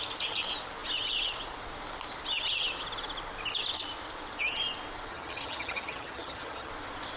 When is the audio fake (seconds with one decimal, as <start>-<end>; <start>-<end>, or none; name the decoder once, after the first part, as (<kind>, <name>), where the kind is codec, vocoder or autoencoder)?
5.1-6.7 (vocoder, HiFi-GAN)